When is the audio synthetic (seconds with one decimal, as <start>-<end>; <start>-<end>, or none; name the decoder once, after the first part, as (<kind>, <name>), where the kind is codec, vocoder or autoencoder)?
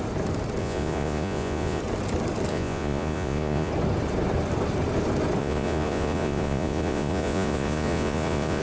0.6-1.8 (vocoder, Vocos); 2.5-3.7; 5.4-8.6